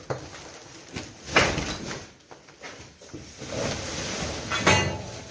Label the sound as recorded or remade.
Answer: recorded